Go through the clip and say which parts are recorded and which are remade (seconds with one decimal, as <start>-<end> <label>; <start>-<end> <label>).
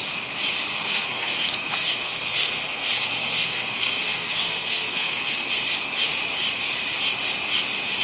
0.0-0.7 recorded; 0.7-5.5 remade; 5.5-8.0 recorded